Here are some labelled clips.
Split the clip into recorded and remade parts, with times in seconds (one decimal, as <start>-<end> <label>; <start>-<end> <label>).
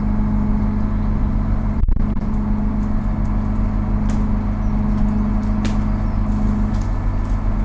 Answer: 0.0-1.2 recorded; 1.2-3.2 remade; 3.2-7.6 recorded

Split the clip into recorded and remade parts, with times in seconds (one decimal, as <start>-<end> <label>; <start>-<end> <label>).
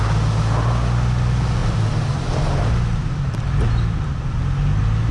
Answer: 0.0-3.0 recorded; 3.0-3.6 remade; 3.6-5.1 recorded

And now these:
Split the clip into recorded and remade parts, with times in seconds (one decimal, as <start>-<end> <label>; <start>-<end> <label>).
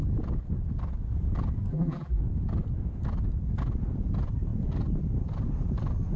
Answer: 0.0-1.7 recorded; 1.7-2.2 remade; 2.2-6.2 recorded